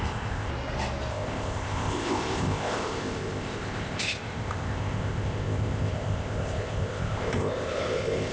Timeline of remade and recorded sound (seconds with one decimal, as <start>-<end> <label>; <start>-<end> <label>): 0.0-0.5 remade; 0.5-1.1 recorded; 1.1-8.3 remade